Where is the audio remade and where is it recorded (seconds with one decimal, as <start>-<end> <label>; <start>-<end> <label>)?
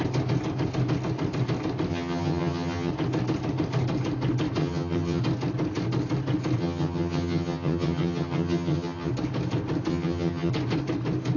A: 0.0-1.9 recorded; 1.9-2.9 remade; 2.9-4.6 recorded; 4.6-5.2 remade; 5.2-6.6 recorded; 6.6-9.1 remade; 9.1-9.9 recorded; 9.9-10.5 remade; 10.5-11.4 recorded